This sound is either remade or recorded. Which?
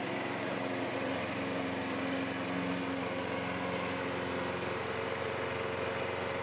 recorded